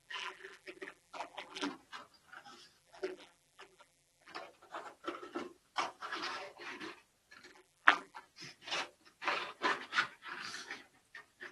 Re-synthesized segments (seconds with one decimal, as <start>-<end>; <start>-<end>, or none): 0.0-1.7; 2.8-4.3; 7.5-8.2